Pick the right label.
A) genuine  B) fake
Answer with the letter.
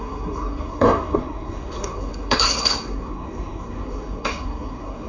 B